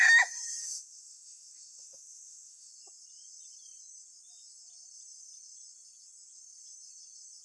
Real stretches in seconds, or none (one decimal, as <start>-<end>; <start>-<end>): 0.0-0.6; 2.7-7.4